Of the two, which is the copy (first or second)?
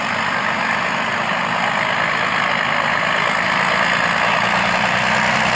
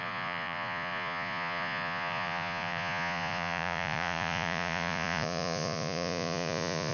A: second